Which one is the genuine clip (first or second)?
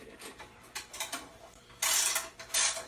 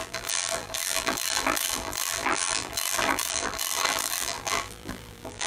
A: first